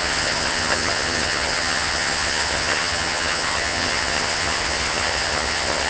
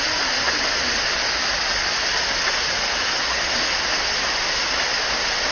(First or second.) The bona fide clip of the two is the second